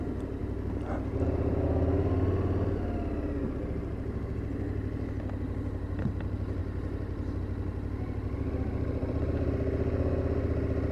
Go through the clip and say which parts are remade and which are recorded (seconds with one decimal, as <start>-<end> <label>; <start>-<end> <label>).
0.0-6.6 recorded; 6.6-7.4 remade; 7.4-9.0 recorded; 9.0-9.5 remade; 9.5-10.9 recorded